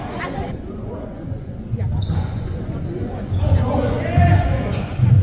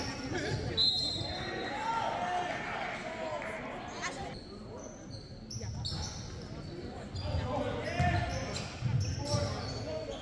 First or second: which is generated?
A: first